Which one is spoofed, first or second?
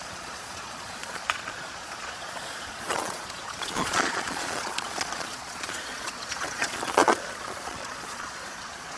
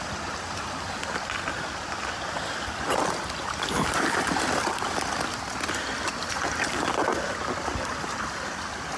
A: first